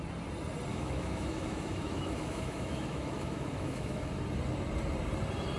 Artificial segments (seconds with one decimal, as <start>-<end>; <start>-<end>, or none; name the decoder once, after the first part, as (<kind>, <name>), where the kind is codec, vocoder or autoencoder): 0.7-4.1 (autoencoder, DAC-VAE)